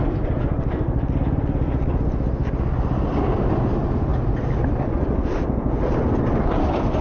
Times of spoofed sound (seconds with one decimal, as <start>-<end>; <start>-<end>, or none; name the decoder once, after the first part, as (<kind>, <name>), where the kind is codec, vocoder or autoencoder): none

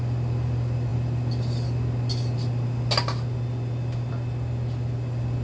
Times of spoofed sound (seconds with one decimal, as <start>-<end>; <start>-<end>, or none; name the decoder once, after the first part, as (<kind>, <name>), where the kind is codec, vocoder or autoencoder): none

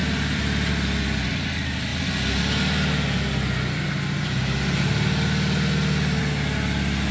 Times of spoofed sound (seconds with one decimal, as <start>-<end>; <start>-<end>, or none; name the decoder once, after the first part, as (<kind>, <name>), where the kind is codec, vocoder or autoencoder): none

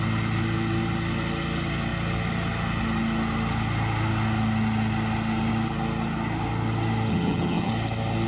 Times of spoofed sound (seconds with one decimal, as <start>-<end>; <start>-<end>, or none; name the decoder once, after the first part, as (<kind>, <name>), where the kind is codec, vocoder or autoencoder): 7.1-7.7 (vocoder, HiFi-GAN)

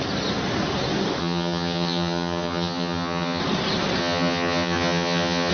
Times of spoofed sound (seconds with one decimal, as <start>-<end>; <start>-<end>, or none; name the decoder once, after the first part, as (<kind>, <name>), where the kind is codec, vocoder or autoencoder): 1.2-3.4 (vocoder, HiFi-GAN); 4.0-5.5